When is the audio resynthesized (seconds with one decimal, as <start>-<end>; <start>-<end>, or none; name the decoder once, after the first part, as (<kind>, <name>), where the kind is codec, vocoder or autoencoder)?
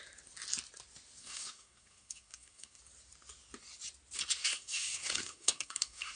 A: 1.2-2.8 (codec, SNAC); 4.4-6.2